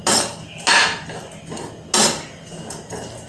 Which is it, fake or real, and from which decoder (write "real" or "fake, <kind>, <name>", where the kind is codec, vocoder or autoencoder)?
real